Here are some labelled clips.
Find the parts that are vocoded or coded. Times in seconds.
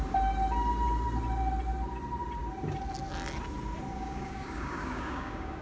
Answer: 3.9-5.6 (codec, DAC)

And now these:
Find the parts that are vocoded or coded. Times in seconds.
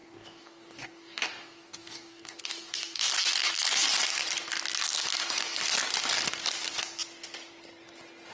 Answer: 0.0-3.1 (codec, DAC)